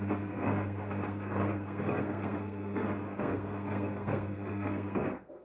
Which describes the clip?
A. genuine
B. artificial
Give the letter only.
B